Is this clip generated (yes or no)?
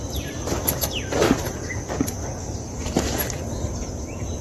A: yes